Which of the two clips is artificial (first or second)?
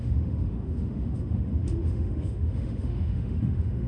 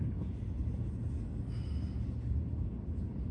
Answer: first